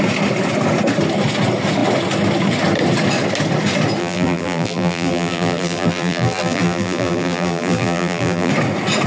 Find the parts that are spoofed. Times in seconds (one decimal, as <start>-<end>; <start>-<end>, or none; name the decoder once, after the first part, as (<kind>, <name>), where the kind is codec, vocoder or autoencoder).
4.0-8.5 (vocoder, BigVGAN v2)